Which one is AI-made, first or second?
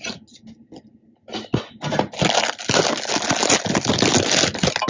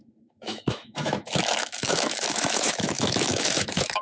second